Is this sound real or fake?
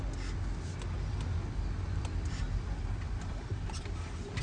real